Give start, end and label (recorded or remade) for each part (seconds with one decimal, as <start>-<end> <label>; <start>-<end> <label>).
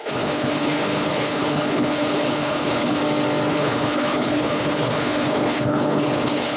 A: 0.0-3.0 remade; 3.0-3.5 recorded; 3.5-6.6 remade